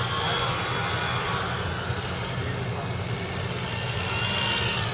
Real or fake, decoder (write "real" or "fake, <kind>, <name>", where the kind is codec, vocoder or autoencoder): real